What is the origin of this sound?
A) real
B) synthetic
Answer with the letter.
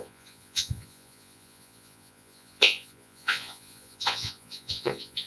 B